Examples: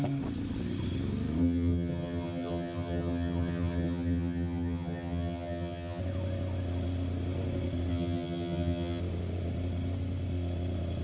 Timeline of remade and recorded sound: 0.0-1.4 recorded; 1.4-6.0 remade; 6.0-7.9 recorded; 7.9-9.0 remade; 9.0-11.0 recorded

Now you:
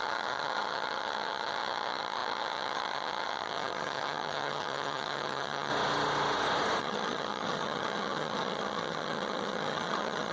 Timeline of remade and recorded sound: 0.0-5.7 remade; 5.7-6.8 recorded; 6.8-10.3 remade

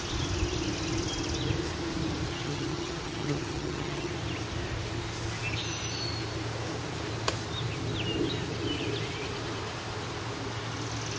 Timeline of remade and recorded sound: 0.0-2.3 recorded; 2.3-4.1 remade; 4.1-11.2 recorded

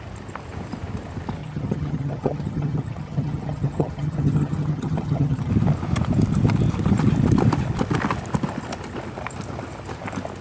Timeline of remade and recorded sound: 0.0-1.4 recorded; 1.4-5.5 remade; 5.5-10.4 recorded

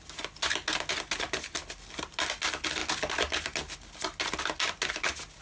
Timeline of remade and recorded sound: 0.0-5.4 recorded

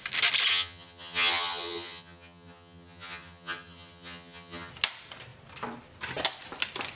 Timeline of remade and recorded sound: 0.0-0.5 recorded; 0.5-4.7 remade; 4.7-7.0 recorded

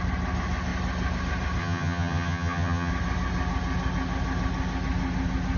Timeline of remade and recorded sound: 0.0-1.6 recorded; 1.6-2.9 remade; 2.9-5.6 recorded

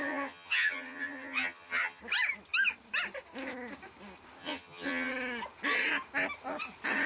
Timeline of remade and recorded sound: 0.0-2.0 remade; 2.0-4.4 recorded; 4.4-5.1 remade; 5.1-7.1 recorded